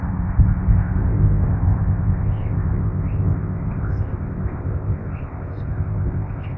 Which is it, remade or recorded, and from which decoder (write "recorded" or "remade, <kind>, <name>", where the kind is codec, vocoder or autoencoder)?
remade, codec, ZipCodec